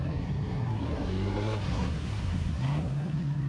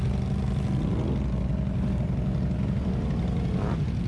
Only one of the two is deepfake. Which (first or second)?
first